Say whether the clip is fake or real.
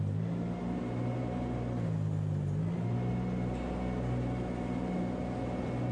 real